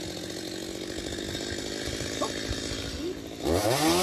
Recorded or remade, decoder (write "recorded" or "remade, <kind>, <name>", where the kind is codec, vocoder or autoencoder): recorded